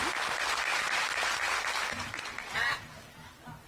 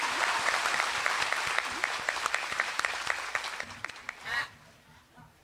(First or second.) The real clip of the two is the first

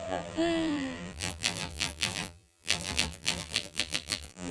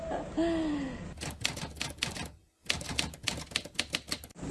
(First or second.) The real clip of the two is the second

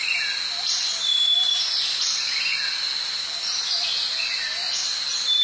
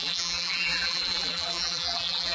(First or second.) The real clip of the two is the first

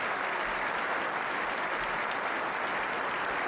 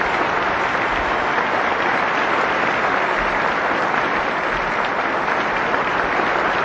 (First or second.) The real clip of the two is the first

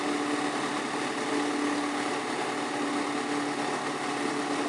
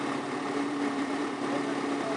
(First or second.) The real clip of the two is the first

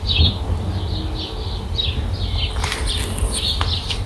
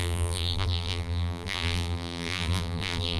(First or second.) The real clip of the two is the first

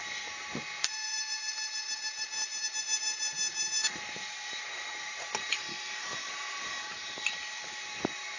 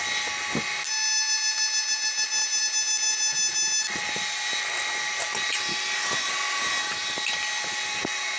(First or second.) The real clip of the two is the second